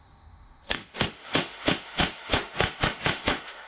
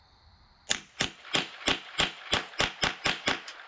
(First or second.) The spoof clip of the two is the first